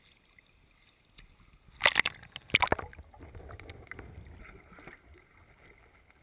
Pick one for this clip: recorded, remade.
recorded